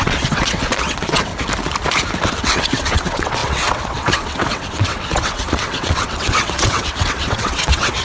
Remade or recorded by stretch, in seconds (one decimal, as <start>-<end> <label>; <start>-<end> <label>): 0.0-1.3 remade; 1.3-2.3 recorded; 2.3-8.0 remade